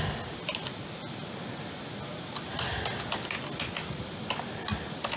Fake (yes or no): no